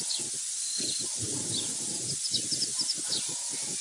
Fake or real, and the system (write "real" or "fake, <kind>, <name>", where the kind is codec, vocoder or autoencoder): real